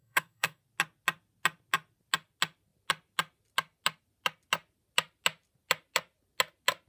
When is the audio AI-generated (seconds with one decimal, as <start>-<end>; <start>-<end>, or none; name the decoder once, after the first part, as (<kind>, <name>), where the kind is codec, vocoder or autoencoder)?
0.0-0.6 (codec, SNAC)